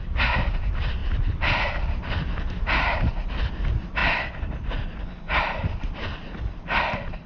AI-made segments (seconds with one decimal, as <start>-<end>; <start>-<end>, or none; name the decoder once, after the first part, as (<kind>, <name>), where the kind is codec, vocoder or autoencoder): none